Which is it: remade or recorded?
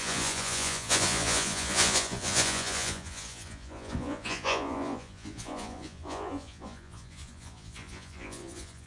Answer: remade